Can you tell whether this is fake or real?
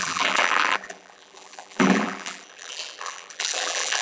fake